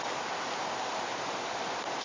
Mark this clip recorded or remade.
recorded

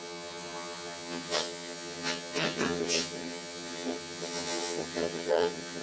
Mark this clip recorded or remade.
remade